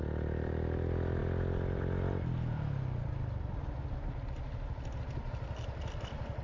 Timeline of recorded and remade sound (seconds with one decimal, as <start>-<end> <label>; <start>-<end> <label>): 0.0-6.4 recorded